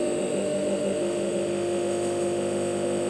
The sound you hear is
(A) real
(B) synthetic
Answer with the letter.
B